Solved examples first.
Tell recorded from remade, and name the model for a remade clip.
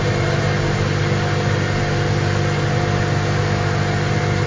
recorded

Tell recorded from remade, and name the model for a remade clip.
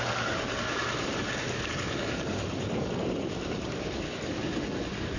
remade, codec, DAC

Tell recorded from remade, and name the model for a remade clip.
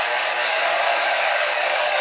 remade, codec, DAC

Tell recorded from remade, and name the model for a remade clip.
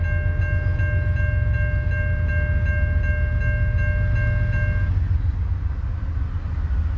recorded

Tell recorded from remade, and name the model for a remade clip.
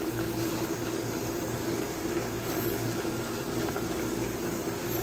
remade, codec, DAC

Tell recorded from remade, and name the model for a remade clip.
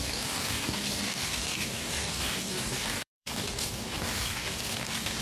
remade, codec, DAC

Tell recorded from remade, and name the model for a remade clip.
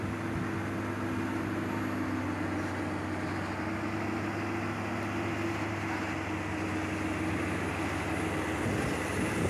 recorded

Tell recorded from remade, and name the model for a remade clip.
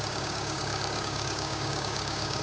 remade, codec, DAC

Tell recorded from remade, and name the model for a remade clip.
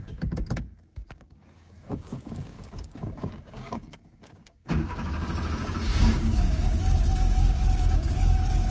remade, codec, DAC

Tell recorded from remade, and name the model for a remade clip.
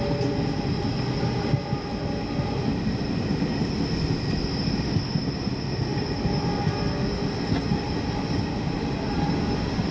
recorded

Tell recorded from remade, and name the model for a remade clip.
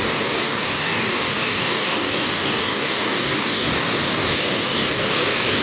remade, codec, DAC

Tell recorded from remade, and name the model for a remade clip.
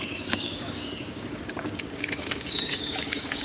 remade, codec, DAC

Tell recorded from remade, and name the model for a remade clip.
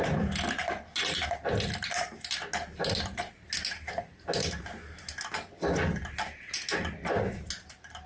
recorded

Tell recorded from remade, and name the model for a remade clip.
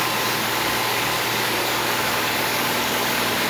remade, codec, DAC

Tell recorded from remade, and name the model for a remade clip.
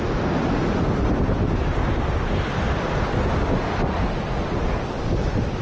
recorded